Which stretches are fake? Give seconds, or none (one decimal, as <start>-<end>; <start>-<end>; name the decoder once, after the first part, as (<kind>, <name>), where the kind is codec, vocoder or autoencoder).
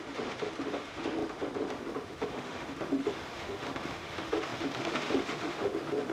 0.0-6.1 (autoencoder, DAC-VAE)